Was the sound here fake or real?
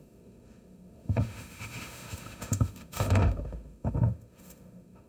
fake